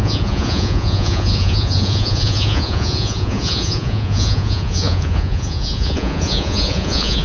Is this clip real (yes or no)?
no